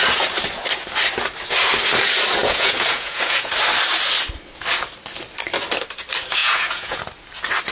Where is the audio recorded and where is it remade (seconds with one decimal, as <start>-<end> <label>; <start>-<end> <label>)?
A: 0.0-2.4 recorded; 2.4-3.5 remade; 3.5-6.4 recorded; 6.4-7.0 remade; 7.0-7.7 recorded